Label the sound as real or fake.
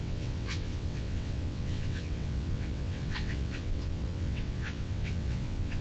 fake